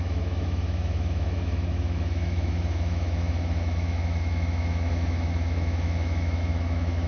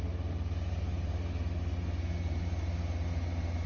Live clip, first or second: second